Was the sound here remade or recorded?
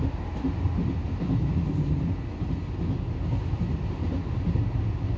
recorded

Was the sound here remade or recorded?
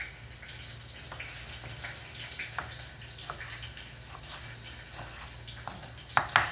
recorded